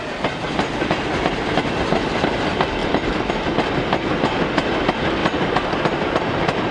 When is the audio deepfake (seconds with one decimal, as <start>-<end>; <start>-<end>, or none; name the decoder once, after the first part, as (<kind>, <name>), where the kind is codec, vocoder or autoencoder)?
none